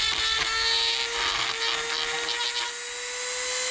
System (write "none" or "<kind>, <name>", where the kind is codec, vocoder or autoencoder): none